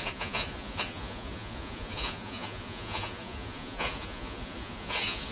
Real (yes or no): no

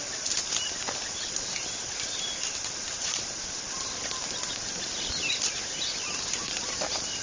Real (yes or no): yes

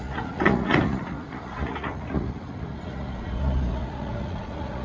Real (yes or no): no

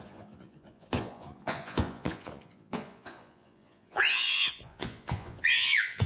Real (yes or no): no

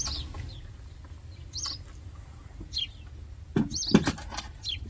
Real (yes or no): yes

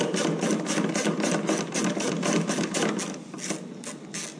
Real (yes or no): yes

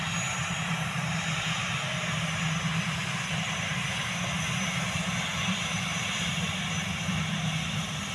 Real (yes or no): yes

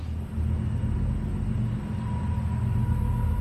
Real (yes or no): yes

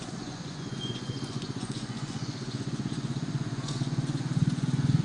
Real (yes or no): no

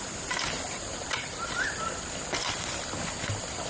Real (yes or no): yes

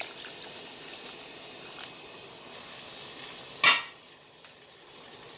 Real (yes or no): yes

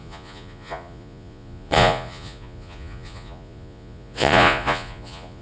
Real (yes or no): no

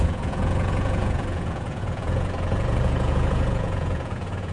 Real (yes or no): no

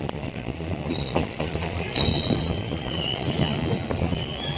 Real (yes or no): no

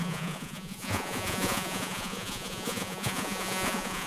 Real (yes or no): no